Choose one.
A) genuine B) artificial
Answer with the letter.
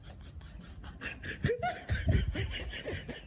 A